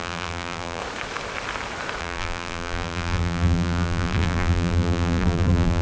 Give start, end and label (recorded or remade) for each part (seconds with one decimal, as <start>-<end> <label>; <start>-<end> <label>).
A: 0.0-0.8 remade; 0.8-2.0 recorded; 2.0-5.8 remade